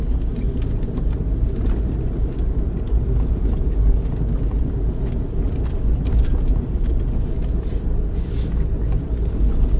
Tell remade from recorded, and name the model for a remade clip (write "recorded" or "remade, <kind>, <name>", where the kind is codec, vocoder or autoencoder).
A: recorded